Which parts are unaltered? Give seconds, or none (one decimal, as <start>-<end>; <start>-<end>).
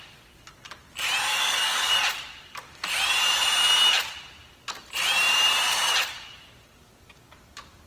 0.0-1.3; 1.9-7.9